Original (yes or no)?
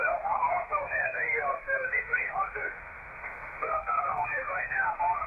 no